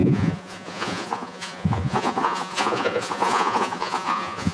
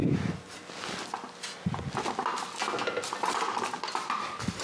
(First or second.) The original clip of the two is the second